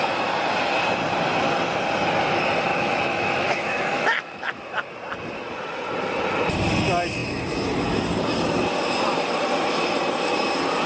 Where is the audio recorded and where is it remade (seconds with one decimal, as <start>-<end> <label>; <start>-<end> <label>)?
0.0-2.7 recorded; 2.7-4.6 remade; 4.6-10.9 recorded